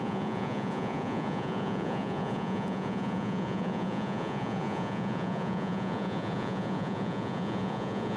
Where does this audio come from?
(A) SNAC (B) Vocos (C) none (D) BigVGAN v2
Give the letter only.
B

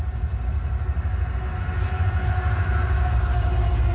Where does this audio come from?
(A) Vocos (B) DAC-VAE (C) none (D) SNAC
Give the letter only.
C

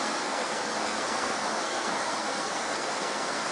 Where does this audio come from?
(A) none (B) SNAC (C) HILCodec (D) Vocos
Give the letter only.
B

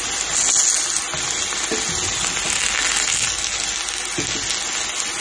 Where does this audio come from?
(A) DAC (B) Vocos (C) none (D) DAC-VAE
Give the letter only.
C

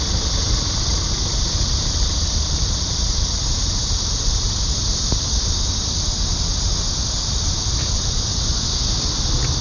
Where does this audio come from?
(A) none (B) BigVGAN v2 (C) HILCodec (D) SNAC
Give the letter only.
B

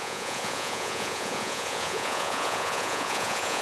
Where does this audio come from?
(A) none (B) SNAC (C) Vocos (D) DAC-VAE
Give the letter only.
C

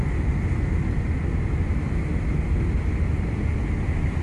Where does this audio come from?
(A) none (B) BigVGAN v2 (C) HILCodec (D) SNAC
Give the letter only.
A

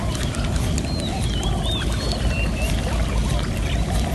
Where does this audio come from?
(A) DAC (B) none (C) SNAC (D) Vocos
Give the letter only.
B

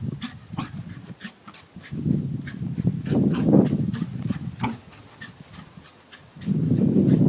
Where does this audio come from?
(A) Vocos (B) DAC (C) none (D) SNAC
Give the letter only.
C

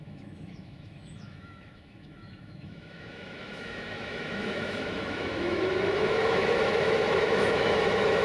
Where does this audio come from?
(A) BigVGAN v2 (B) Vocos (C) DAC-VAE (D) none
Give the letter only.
C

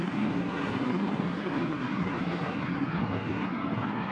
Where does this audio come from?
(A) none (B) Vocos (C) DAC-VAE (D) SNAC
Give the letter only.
D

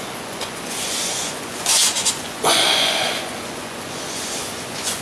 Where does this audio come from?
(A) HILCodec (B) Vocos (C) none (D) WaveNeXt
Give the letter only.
B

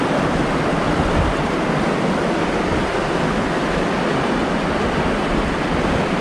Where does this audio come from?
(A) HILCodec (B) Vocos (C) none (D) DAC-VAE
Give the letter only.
C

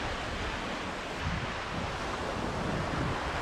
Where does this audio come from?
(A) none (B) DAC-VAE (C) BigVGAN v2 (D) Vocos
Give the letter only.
A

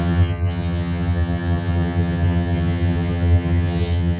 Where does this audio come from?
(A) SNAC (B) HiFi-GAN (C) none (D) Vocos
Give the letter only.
B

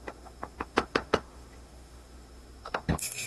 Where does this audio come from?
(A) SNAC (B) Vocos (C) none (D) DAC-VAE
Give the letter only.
D